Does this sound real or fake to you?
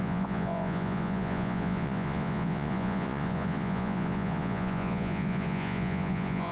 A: fake